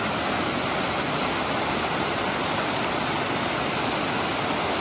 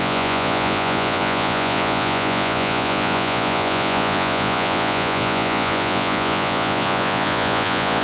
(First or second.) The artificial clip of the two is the second